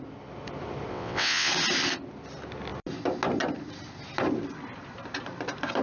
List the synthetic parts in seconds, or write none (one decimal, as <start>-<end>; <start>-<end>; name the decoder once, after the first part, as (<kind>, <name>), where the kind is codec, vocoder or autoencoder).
0.9-1.5 (vocoder, WaveNeXt)